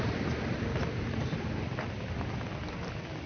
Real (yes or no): yes